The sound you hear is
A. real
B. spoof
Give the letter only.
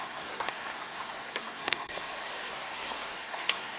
B